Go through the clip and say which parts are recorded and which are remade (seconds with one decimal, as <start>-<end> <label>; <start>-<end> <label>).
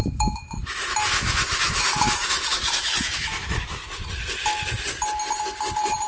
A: 0.0-3.8 remade; 3.8-6.1 recorded